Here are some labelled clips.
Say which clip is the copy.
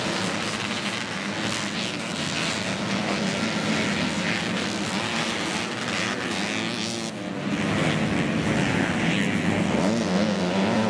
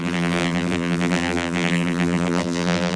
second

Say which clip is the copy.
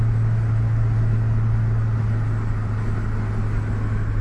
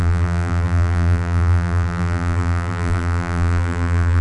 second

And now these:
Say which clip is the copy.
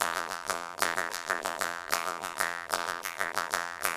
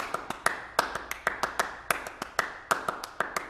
first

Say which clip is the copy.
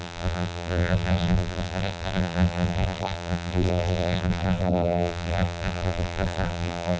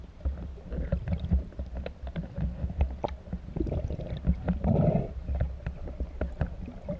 first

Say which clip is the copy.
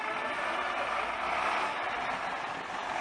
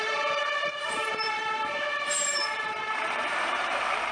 second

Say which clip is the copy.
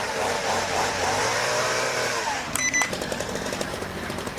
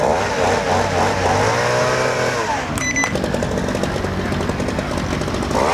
first